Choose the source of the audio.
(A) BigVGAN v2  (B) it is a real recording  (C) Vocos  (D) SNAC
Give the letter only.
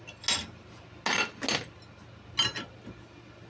B